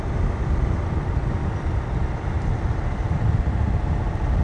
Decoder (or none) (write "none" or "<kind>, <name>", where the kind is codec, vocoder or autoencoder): none